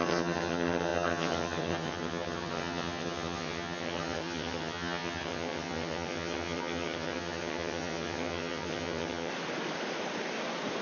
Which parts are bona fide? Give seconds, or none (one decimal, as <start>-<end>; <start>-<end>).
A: 9.3-10.8